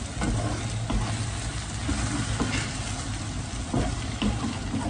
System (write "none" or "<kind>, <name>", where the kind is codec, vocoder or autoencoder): none